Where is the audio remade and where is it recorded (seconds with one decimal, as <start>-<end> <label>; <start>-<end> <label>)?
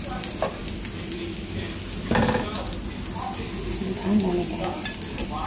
0.0-5.5 recorded